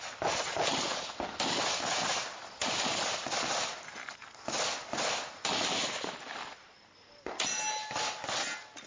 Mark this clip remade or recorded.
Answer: recorded